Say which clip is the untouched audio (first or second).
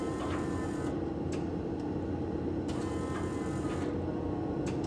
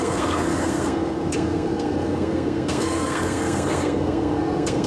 first